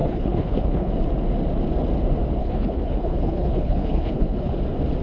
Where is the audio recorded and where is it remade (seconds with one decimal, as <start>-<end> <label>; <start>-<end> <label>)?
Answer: 0.0-0.9 remade; 0.9-2.4 recorded; 2.4-4.5 remade; 4.5-5.0 recorded

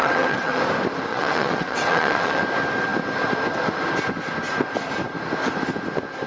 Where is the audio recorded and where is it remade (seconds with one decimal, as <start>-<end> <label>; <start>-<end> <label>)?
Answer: 0.0-0.6 remade; 0.6-1.1 recorded; 1.1-2.4 remade; 2.4-6.3 recorded

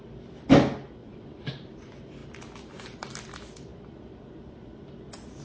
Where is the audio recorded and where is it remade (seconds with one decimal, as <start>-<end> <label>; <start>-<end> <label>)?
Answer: 0.0-1.0 recorded; 1.0-1.5 remade; 1.5-5.4 recorded

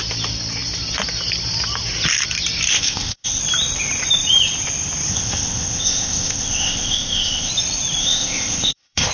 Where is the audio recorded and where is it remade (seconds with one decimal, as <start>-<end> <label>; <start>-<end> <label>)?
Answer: 0.0-2.7 recorded; 2.7-3.4 remade; 3.4-5.1 recorded; 5.1-7.5 remade; 7.5-8.0 recorded; 8.0-9.1 remade

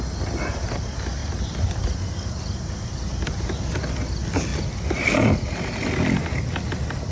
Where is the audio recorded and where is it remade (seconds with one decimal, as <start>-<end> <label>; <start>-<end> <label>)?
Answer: 0.0-1.2 recorded; 1.2-1.8 remade; 1.8-7.1 recorded